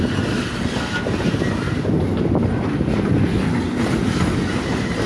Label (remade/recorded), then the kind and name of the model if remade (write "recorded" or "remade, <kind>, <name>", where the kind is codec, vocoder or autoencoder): recorded